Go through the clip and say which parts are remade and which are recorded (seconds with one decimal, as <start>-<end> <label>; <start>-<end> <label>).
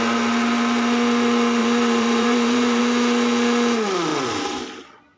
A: 0.0-1.6 recorded; 1.6-2.8 remade; 2.8-5.2 recorded